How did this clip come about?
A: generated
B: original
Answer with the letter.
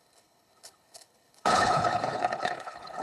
A